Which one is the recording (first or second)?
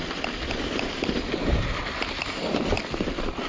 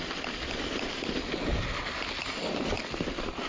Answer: second